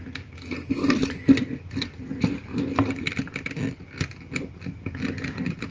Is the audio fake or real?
real